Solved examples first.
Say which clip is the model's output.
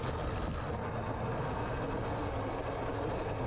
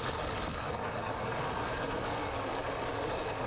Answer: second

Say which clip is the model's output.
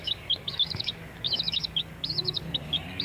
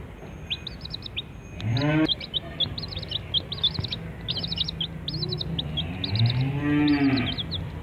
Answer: first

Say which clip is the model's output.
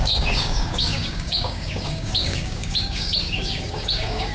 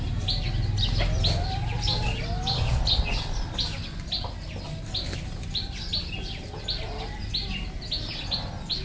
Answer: first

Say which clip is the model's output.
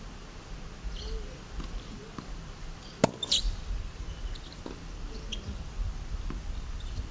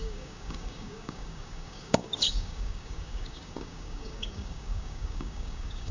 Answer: second